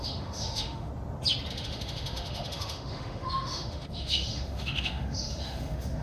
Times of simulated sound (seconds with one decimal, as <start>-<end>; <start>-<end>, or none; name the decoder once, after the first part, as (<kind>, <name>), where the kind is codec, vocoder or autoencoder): 0.0-0.9 (autoencoder, DAC-VAE); 1.5-6.0